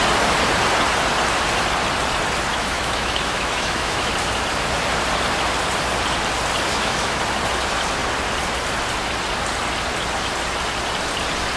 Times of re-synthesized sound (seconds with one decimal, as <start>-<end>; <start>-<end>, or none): 2.5-4.1; 6.7-7.2